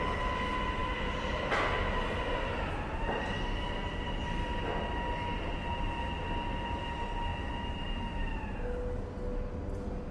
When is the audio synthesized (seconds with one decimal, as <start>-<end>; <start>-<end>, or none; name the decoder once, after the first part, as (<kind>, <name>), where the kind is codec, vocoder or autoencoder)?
none